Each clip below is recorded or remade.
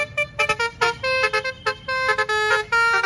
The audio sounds recorded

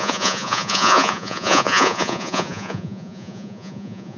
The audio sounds remade